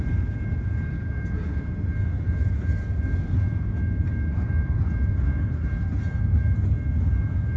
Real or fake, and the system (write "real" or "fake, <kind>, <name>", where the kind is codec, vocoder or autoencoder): real